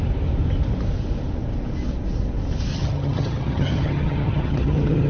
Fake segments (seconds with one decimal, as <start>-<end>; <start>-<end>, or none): 2.7-5.1